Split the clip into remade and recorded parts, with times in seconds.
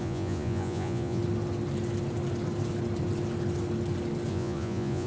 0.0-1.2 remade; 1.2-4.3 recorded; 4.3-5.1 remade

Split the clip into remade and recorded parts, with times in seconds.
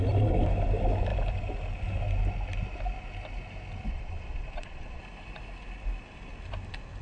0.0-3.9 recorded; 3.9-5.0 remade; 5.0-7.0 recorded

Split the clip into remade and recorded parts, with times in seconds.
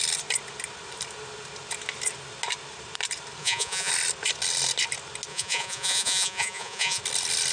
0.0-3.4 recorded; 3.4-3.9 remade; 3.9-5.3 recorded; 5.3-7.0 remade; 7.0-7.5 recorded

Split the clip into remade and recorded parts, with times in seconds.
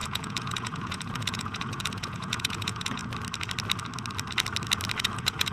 0.0-3.0 remade; 3.0-5.0 recorded; 5.0-5.5 remade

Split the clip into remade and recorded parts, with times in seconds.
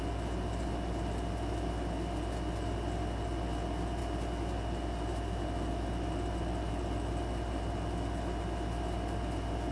0.0-9.7 recorded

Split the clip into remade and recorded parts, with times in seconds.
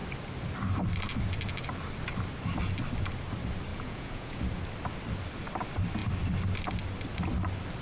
0.0-3.7 recorded; 3.7-4.4 remade; 4.4-7.8 recorded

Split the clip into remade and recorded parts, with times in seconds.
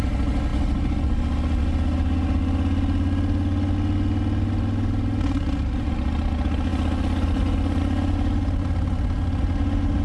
0.0-10.0 recorded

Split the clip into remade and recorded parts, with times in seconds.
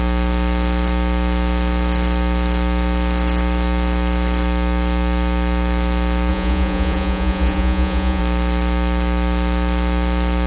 0.0-6.3 recorded; 6.3-8.2 remade; 8.2-10.5 recorded